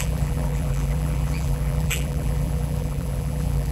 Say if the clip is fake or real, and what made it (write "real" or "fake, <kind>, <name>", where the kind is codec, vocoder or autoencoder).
fake, vocoder, BigVGAN v2